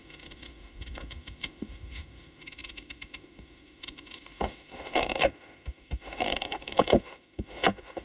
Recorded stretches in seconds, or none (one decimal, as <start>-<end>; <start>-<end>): none